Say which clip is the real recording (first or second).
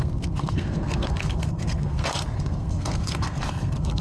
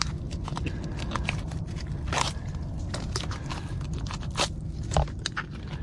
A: second